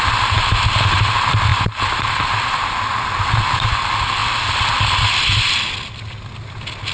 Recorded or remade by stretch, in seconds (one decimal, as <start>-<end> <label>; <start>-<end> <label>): 0.0-6.9 recorded